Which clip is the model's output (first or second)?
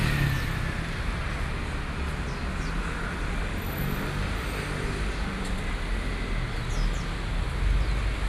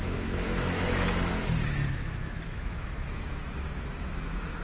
second